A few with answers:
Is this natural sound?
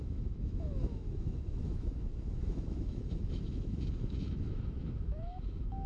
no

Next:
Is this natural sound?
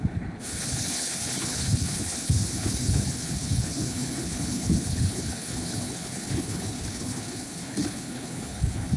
no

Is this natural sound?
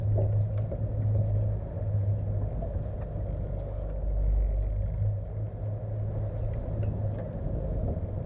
yes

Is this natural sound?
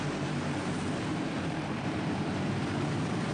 no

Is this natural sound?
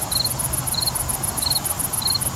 yes